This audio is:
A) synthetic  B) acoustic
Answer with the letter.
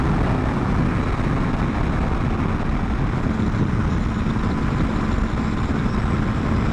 B